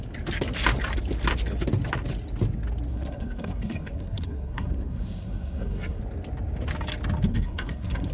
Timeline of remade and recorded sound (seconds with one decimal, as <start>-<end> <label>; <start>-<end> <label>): 0.0-2.9 recorded; 2.9-6.0 remade; 6.0-7.3 recorded; 7.3-8.1 remade